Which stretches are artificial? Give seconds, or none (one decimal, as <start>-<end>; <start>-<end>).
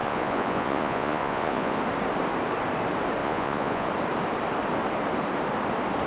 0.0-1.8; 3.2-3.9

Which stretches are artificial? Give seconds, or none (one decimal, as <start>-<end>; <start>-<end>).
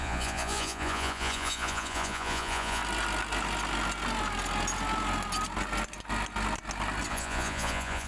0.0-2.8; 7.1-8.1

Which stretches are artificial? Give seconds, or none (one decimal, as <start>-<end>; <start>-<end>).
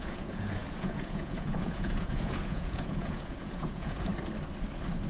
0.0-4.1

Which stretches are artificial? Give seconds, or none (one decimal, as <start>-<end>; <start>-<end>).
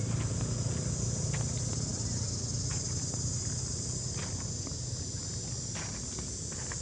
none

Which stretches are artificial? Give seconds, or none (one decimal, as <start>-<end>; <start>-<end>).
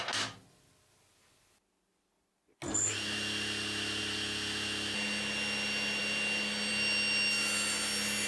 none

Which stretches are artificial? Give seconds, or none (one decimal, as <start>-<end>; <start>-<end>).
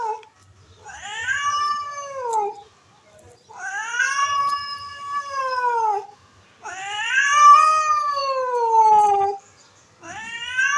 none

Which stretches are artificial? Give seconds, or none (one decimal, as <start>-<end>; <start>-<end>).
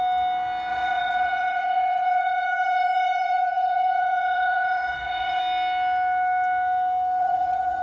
0.7-5.4; 7.2-7.8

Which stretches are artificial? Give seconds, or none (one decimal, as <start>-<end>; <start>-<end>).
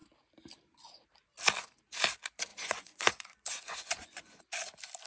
2.5-4.4